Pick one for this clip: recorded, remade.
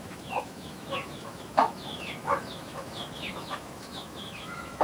remade